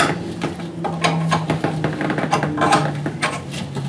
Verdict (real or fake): real